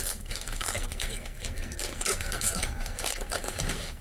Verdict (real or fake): fake